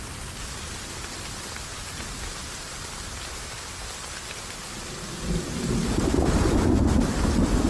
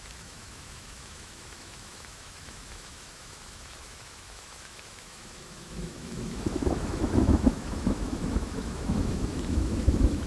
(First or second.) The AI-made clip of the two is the second